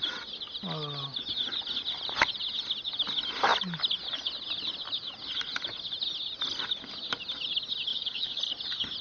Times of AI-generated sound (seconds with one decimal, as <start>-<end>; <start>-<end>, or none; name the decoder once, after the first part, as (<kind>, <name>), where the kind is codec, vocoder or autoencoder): 7.9-8.4 (codec, DAC)